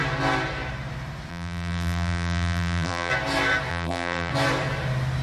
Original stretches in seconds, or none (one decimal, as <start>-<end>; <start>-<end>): 0.0-1.3; 3.1-3.7; 4.3-5.2